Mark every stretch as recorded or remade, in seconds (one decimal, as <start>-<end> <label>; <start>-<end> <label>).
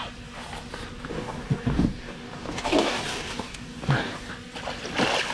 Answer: 0.0-1.1 recorded; 1.1-4.3 remade; 4.3-5.3 recorded